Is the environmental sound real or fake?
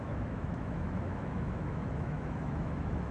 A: fake